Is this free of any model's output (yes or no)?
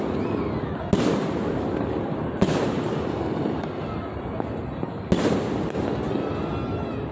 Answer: yes